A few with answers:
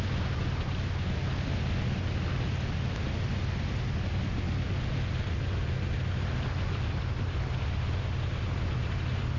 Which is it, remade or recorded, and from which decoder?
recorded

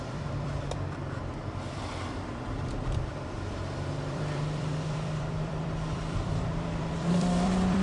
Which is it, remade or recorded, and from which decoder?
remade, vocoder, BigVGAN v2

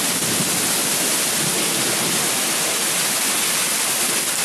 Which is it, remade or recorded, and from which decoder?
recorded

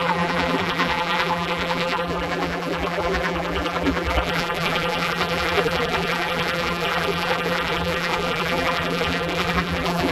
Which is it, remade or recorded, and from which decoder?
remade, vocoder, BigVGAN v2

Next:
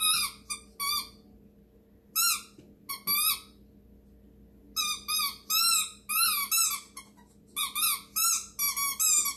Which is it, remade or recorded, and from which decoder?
recorded